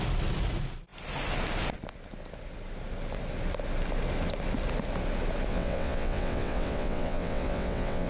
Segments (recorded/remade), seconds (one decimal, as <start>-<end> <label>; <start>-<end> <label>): 0.0-5.5 recorded; 5.5-8.1 remade